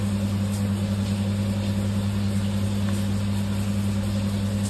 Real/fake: real